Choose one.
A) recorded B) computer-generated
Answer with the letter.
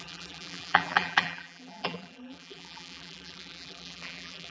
B